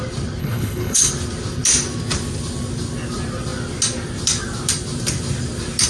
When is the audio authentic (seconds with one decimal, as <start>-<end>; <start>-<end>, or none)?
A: 0.0-0.4; 1.1-5.9